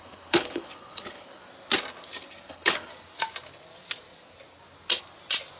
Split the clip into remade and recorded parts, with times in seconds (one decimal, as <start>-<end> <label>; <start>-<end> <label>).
0.0-1.4 remade; 1.4-2.5 recorded; 2.5-2.9 remade; 2.9-5.6 recorded

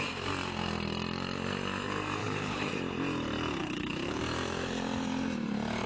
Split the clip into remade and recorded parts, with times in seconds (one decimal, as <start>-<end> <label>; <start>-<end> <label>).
0.0-2.2 recorded; 2.2-2.7 remade; 2.7-3.6 recorded; 3.6-4.2 remade; 4.2-5.9 recorded